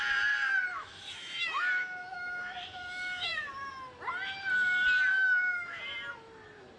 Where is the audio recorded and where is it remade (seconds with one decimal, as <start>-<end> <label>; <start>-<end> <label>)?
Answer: 0.0-0.7 recorded; 0.7-3.5 remade; 3.5-5.1 recorded; 5.1-5.8 remade; 5.8-6.8 recorded